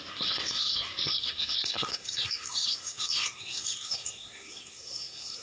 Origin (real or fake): fake